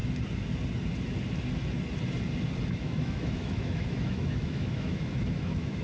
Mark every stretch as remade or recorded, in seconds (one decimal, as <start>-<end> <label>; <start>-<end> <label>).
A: 0.0-2.7 recorded; 2.7-5.8 remade